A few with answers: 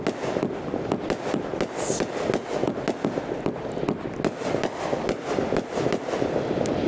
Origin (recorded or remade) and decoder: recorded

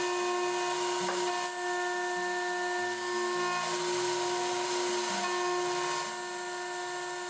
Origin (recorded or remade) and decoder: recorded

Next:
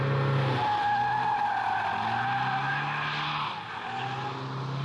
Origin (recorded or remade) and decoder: recorded